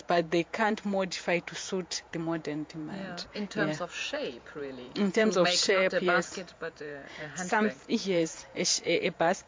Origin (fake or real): fake